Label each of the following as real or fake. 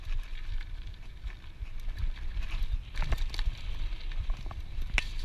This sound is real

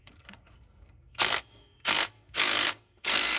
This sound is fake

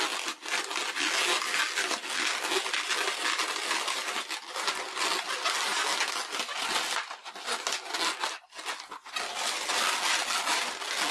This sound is real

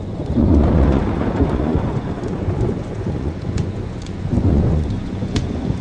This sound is fake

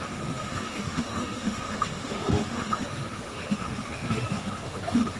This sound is fake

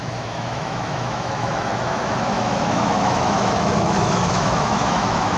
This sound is fake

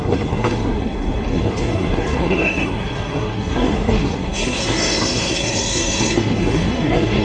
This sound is fake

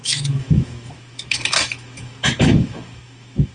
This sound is fake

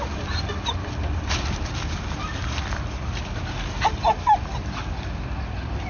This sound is real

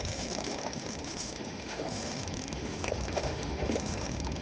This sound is fake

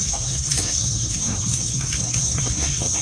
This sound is fake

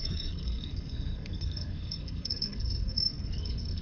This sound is fake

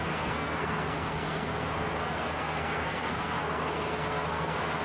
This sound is fake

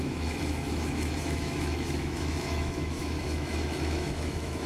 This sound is fake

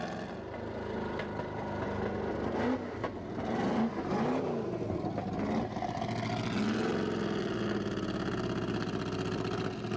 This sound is real